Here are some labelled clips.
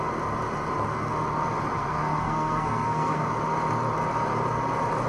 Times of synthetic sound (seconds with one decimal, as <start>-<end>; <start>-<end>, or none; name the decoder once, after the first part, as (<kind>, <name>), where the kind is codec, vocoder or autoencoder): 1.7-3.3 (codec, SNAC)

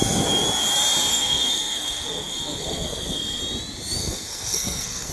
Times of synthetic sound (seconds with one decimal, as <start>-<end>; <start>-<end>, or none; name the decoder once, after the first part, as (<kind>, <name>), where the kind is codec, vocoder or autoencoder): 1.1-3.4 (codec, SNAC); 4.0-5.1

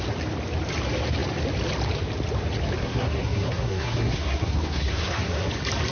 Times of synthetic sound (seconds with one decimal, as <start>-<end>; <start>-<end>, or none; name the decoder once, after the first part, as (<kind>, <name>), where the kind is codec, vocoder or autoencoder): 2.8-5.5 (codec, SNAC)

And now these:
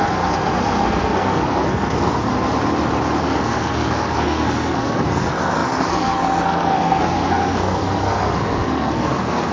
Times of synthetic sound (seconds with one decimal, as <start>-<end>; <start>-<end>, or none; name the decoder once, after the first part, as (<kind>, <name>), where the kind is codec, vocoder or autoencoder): 0.0-2.3 (codec, SNAC); 3.2-9.5

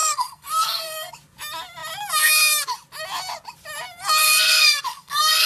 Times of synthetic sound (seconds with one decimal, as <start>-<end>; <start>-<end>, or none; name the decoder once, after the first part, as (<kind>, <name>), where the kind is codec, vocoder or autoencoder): 0.0-1.1 (codec, SNAC); 4.2-5.5